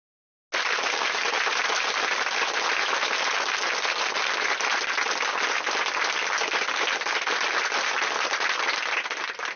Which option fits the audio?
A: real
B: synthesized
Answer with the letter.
A